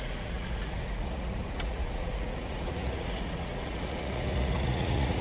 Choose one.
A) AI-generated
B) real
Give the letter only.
A